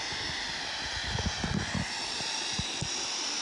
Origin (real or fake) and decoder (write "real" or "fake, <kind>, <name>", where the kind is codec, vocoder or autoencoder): real